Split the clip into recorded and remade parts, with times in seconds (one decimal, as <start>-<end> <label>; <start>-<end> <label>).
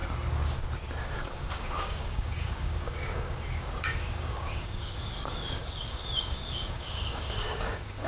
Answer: 0.0-1.0 recorded; 1.0-8.1 remade